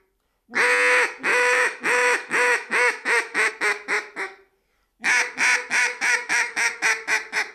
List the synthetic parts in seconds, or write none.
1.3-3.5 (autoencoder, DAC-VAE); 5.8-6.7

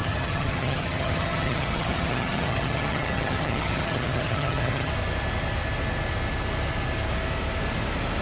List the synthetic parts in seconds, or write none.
0.0-4.9 (vocoder, HiFi-GAN)

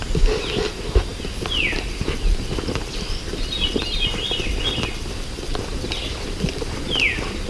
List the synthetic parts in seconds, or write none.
none